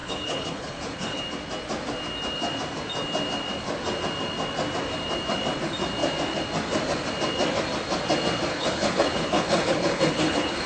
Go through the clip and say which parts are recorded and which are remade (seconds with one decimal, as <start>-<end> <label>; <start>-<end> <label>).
0.0-1.2 remade; 1.2-8.5 recorded; 8.5-10.7 remade